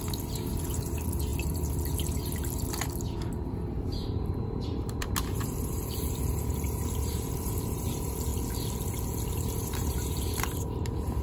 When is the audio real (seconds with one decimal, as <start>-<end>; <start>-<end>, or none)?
8.3-9.3